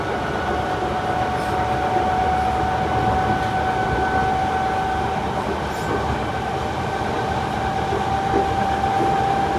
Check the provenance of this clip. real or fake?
real